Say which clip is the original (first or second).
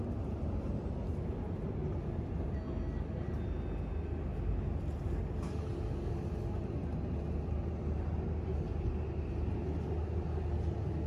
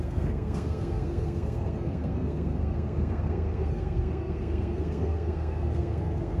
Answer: first